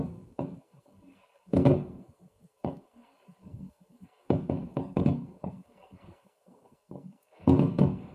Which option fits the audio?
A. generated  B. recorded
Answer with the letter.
A